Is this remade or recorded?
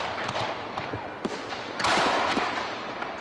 remade